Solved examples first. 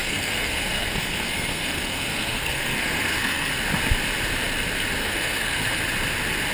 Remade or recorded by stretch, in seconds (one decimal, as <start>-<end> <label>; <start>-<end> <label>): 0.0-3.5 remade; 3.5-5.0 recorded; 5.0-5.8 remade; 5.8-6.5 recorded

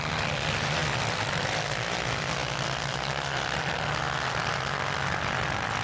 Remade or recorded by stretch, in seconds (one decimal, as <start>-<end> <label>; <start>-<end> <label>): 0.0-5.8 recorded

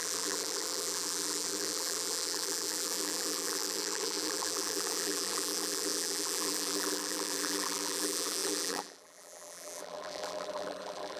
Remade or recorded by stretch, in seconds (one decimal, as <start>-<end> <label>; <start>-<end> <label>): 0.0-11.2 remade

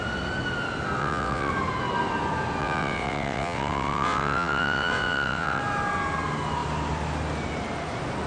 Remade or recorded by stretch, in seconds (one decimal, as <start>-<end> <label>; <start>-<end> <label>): 0.0-1.0 recorded; 1.0-1.5 remade; 1.5-2.6 recorded; 2.6-5.6 remade; 5.6-8.3 recorded

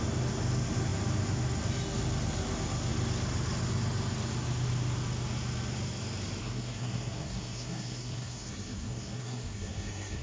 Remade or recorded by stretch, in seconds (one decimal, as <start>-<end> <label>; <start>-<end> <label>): 0.0-6.4 recorded; 6.4-10.2 remade

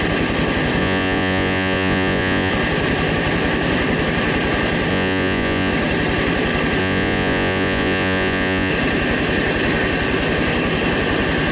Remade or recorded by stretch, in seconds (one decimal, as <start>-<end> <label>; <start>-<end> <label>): 0.0-0.8 recorded; 0.8-2.5 remade; 2.5-4.9 recorded; 4.9-5.7 remade; 5.7-6.8 recorded; 6.8-8.7 remade; 8.7-11.5 recorded